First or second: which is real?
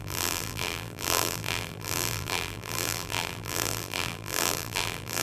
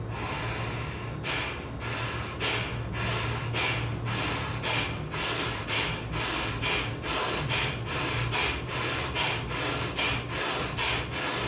second